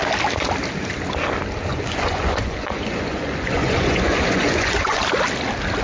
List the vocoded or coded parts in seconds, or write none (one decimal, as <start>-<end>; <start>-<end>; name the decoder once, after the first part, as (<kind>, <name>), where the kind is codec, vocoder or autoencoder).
1.7-5.0 (vocoder, Vocos)